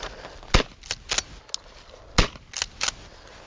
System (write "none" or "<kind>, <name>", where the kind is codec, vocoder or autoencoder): none